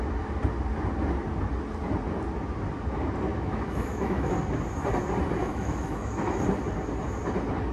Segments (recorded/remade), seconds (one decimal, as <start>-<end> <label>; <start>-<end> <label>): 0.0-3.3 recorded; 3.3-4.3 remade; 4.3-5.4 recorded; 5.4-6.4 remade; 6.4-7.7 recorded